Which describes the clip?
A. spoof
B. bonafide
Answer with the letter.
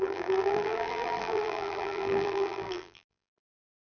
A